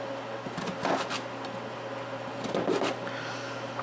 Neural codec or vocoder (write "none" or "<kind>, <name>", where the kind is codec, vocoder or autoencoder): none